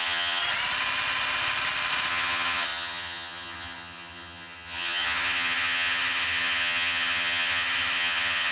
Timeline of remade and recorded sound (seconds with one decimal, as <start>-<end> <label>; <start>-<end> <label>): 0.0-0.4 remade; 0.4-2.1 recorded; 2.1-8.5 remade